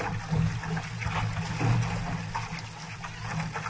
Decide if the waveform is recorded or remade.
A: recorded